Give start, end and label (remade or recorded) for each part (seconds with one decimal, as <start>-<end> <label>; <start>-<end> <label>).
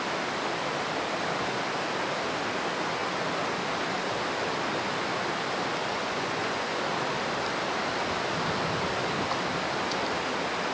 0.0-5.8 recorded; 5.8-6.8 remade; 6.8-10.7 recorded